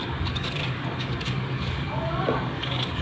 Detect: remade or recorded remade